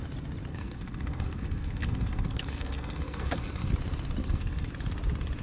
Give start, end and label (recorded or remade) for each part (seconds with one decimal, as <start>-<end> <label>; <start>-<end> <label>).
0.0-0.5 recorded; 0.5-3.7 remade; 3.7-4.2 recorded; 4.2-4.7 remade; 4.7-5.4 recorded